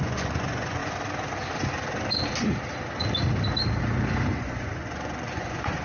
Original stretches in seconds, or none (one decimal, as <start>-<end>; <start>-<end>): 0.8-4.3